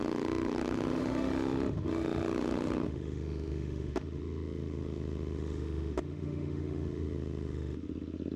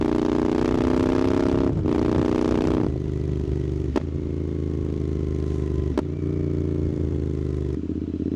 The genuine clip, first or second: second